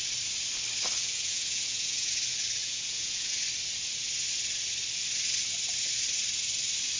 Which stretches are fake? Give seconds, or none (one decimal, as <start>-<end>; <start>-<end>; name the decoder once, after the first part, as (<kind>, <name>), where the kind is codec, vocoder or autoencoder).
1.0-2.1 (vocoder, Vocos); 2.6-3.3